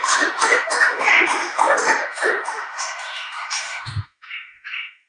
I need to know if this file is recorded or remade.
remade